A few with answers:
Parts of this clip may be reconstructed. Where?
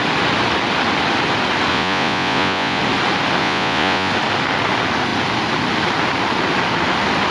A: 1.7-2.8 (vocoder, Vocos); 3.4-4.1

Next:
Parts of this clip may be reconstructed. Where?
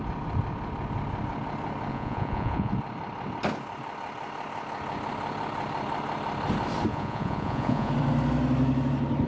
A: 1.9-2.7 (vocoder, Vocos); 6.9-7.9